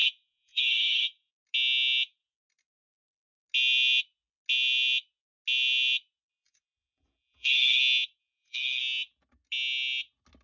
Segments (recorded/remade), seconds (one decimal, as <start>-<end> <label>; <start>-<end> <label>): 0.0-1.3 remade; 1.3-6.3 recorded; 6.3-7.8 remade; 7.8-8.2 recorded; 8.2-8.8 remade; 8.8-10.4 recorded